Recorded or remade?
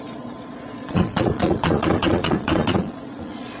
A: remade